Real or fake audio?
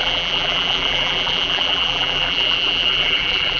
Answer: fake